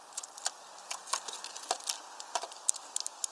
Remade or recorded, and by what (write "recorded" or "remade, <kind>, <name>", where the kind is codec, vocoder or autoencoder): recorded